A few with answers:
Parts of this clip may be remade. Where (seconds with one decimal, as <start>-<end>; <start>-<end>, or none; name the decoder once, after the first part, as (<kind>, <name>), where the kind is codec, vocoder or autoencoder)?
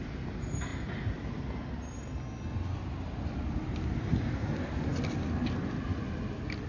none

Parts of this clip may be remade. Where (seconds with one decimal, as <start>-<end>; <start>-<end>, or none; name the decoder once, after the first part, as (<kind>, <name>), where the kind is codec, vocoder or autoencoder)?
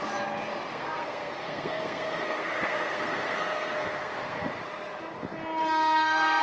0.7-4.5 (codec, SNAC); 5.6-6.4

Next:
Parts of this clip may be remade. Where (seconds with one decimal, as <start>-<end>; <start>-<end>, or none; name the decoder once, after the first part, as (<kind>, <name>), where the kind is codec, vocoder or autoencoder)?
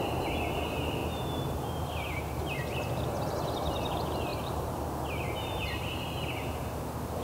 1.0-3.3 (vocoder, BigVGAN v2); 4.3-6.7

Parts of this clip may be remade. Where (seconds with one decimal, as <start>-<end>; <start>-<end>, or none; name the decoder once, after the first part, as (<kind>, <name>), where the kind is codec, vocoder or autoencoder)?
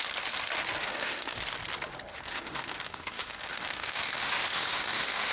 0.8-1.4 (autoencoder, DAC-VAE); 2.1-5.3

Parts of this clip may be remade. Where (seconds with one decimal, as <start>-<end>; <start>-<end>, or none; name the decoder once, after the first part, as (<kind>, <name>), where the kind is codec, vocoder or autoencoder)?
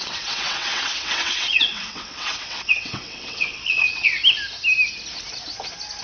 0.0-4.2 (vocoder, WaveNeXt)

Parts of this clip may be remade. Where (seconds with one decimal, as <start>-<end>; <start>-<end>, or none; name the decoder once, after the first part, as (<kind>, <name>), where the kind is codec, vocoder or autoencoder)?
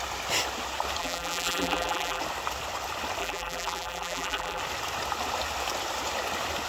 1.0-2.2 (vocoder, BigVGAN v2); 3.2-4.6